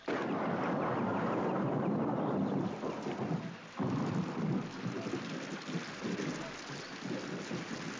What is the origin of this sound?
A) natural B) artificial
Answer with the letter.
A